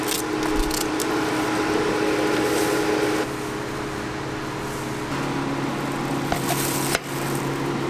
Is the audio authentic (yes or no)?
yes